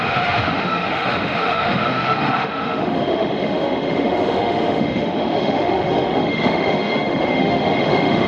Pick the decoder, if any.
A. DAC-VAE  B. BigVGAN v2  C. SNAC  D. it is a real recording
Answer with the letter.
A